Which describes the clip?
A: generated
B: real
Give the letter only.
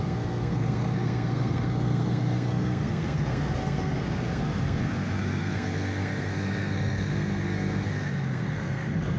A